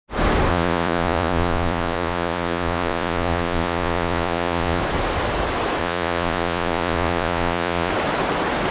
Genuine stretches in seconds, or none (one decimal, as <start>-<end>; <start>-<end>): 0.0-0.5; 4.8-5.8; 7.9-8.7